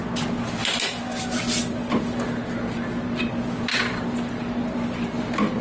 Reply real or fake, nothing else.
real